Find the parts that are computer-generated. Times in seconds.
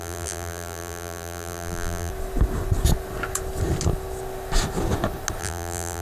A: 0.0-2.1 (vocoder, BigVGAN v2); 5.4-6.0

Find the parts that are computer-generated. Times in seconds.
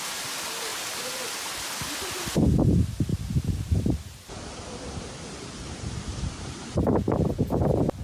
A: 0.7-1.2 (vocoder, BigVGAN v2); 3.1-7.5